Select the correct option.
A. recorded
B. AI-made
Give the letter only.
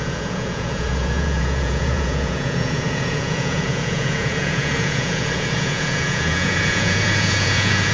B